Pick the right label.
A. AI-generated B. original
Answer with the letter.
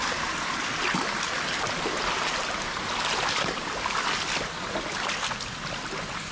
B